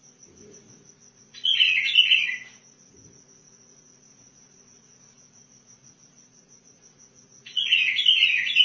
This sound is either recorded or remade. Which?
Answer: remade